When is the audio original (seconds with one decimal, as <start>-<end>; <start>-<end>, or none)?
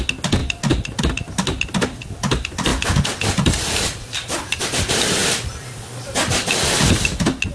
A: 0.0-5.2; 6.8-7.5